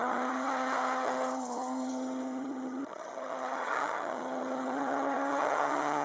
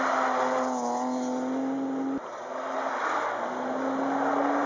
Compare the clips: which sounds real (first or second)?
second